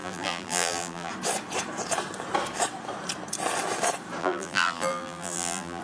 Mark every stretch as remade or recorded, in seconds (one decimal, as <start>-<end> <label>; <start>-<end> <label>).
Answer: 0.0-1.1 remade; 1.1-4.2 recorded; 4.2-5.8 remade